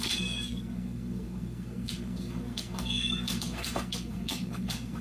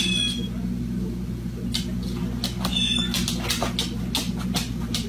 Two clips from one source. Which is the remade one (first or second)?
first